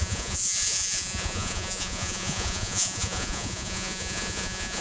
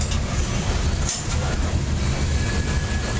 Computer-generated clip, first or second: first